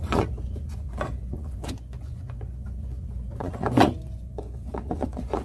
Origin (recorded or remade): remade